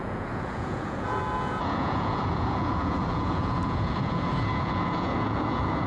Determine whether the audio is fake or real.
fake